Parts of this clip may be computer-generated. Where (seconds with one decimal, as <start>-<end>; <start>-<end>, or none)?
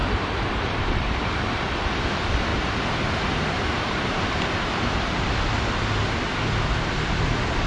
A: 0.0-1.3; 2.5-5.4